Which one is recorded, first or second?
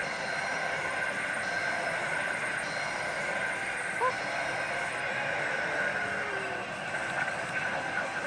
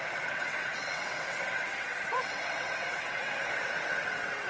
first